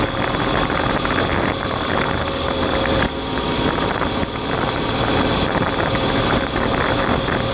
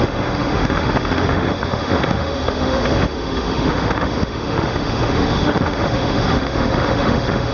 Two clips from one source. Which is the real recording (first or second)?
first